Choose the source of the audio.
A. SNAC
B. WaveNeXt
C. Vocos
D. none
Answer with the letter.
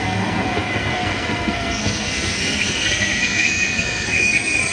A